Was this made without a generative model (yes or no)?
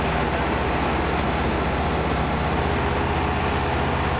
yes